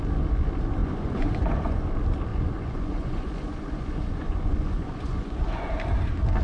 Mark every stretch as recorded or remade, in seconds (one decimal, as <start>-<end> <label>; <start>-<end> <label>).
0.0-0.8 recorded; 0.8-1.9 remade; 1.9-2.3 recorded; 2.3-5.7 remade; 5.7-6.4 recorded

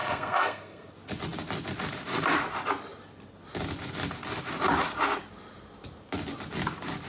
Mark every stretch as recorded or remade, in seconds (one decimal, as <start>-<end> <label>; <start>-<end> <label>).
0.0-0.9 remade; 0.9-7.1 recorded

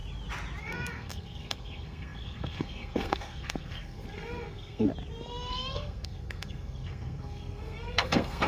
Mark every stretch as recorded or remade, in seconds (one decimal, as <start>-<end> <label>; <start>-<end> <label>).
0.0-0.6 recorded; 0.6-4.9 remade; 4.9-5.5 recorded; 5.5-8.5 remade

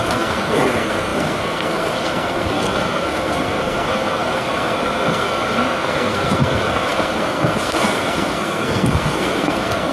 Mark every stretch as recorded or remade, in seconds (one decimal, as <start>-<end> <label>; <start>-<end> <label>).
0.0-9.9 remade